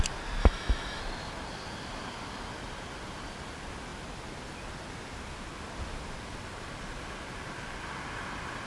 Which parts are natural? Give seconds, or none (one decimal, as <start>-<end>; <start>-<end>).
0.0-0.4; 1.0-8.7